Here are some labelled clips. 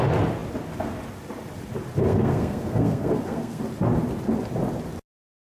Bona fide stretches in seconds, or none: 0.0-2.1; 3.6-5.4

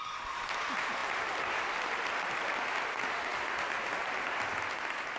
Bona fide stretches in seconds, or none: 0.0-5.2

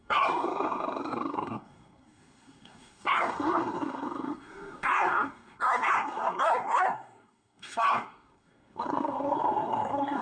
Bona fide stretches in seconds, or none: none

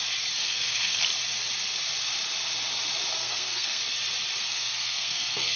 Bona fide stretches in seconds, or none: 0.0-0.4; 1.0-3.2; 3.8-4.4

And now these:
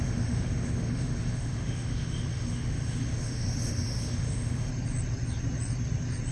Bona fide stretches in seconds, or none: 4.7-6.3

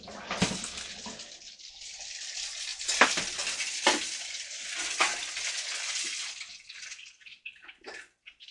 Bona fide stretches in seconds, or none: 0.0-8.5

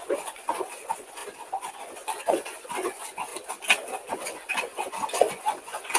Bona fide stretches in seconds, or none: 3.3-4.1

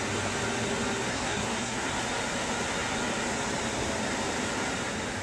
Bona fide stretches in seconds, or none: 0.0-1.1; 1.9-5.2